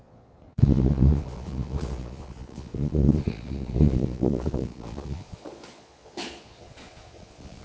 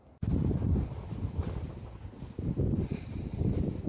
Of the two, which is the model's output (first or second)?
first